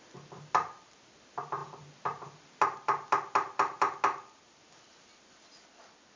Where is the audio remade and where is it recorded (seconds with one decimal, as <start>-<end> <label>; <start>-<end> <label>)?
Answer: 0.0-6.2 recorded